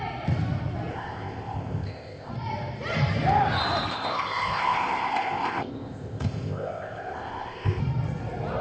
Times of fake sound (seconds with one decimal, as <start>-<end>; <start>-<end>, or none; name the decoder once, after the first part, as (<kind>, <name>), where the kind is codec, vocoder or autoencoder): 0.9-2.3 (codec, ZipCodec); 3.9-7.8